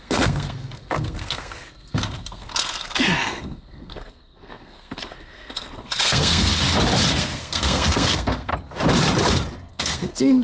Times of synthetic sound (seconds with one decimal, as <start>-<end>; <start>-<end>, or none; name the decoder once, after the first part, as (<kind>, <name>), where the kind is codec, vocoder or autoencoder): 0.0-6.5 (codec, SNAC); 7.2-8.5; 9.7-10.4